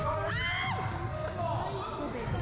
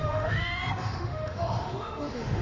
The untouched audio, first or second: first